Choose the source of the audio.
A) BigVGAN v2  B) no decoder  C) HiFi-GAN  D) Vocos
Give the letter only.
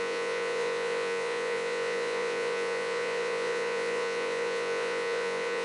D